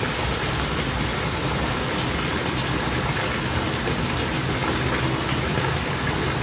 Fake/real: real